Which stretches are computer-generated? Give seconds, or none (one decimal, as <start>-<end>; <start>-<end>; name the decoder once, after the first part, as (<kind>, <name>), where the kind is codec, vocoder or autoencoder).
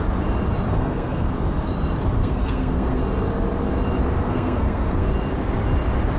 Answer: 0.7-1.3 (codec, SNAC); 2.2-3.0; 4.3-5.1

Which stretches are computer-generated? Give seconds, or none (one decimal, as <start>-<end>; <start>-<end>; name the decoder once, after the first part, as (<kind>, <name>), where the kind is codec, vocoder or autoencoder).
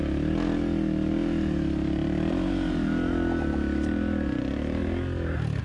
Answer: none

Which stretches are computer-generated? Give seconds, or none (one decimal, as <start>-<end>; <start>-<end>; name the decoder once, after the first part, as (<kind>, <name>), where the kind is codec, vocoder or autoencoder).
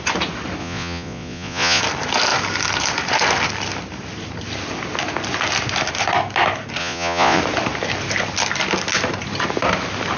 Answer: 0.6-1.8 (vocoder, Vocos); 6.8-7.4